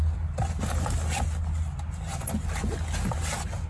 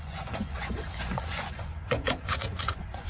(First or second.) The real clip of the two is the first